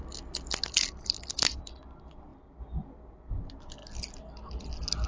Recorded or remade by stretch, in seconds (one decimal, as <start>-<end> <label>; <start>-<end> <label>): 0.0-5.1 recorded